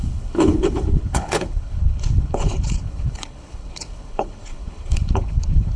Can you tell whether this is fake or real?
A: fake